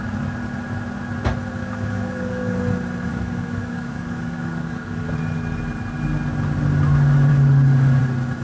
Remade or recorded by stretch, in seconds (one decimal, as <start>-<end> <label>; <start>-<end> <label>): 0.0-1.6 recorded; 1.6-2.6 remade; 2.6-3.1 recorded; 3.1-5.1 remade; 5.1-7.3 recorded; 7.3-8.0 remade; 8.0-8.4 recorded